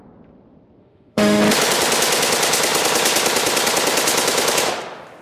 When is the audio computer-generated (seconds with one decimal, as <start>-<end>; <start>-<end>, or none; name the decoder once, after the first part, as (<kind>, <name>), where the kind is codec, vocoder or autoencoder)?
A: 0.8-1.4 (autoencoder, DAC-VAE)